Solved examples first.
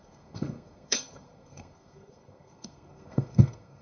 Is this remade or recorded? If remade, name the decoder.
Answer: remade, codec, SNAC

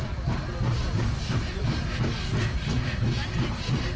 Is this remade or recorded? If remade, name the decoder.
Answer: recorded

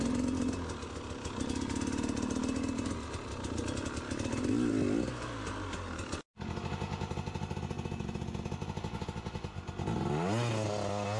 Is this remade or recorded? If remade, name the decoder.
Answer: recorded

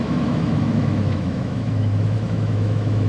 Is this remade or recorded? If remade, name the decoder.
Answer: remade, autoencoder, DAC-VAE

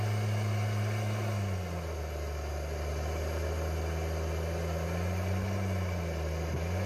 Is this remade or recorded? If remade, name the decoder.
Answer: recorded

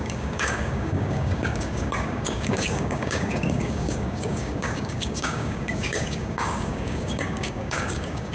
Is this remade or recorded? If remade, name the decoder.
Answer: remade, codec, DAC